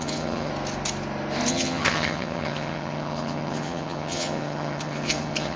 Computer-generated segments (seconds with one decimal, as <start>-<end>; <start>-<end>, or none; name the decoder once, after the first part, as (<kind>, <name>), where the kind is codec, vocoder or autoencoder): 0.0-0.5 (vocoder, HiFi-GAN); 1.5-5.6